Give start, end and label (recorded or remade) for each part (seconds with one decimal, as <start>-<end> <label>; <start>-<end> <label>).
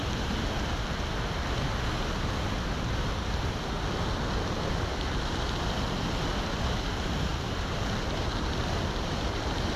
0.0-9.8 recorded